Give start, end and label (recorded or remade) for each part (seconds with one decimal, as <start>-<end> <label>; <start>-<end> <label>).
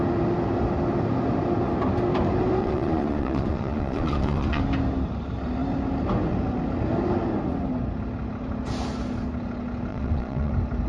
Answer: 0.0-2.6 recorded; 2.6-4.6 remade; 4.6-9.9 recorded; 9.9-10.5 remade; 10.5-10.9 recorded